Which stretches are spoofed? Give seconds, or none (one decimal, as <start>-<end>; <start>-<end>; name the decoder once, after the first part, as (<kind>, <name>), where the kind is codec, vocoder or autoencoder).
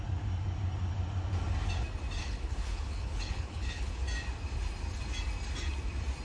2.2-4.0 (codec, HILCodec)